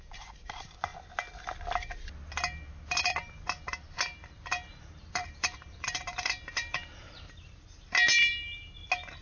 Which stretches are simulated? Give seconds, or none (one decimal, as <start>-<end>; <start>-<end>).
4.7-7.9

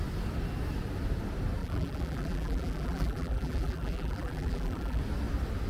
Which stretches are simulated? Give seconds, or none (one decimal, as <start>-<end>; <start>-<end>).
1.6-5.0

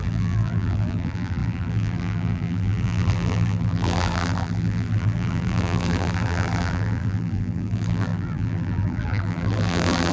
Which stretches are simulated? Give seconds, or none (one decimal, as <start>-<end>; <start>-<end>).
0.0-10.1

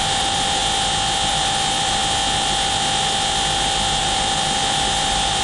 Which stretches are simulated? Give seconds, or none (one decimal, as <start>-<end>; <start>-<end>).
0.0-0.6; 1.3-2.0; 4.0-5.4

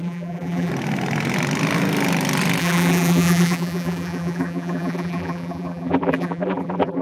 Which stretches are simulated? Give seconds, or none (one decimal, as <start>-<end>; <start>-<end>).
0.0-0.7; 2.6-7.0

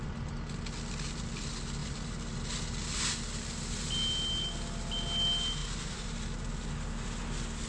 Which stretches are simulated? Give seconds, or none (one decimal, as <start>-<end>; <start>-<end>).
1.8-3.1; 5.6-6.5

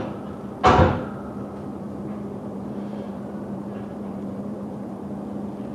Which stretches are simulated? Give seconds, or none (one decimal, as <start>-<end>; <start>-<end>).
1.7-5.1

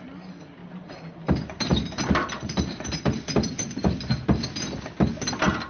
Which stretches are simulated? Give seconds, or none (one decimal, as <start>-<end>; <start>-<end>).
0.6-4.0